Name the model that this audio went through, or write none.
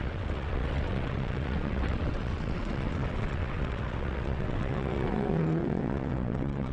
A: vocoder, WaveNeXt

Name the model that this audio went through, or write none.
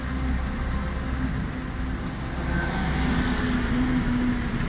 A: none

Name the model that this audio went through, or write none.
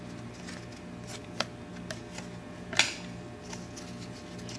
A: none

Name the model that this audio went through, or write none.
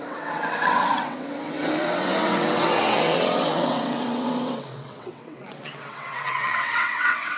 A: vocoder, WaveNeXt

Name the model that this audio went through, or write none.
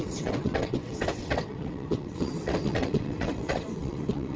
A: vocoder, WaveNeXt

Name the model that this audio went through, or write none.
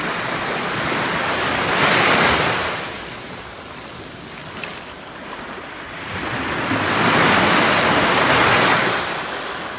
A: none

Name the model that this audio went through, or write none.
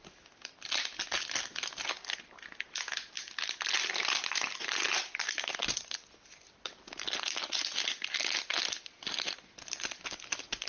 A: none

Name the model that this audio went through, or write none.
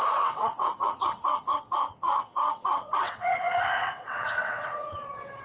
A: vocoder, WaveNeXt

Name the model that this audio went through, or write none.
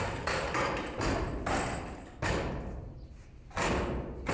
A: none